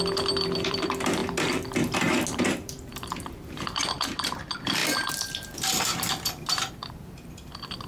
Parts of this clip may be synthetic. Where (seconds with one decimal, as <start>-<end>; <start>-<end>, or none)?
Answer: 0.0-1.2; 2.5-7.9